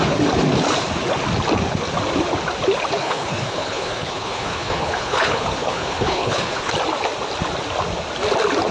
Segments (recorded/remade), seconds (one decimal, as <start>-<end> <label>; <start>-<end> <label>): 0.0-3.0 recorded; 3.0-6.7 remade; 6.7-8.7 recorded